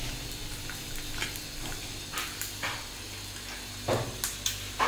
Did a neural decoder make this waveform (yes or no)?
no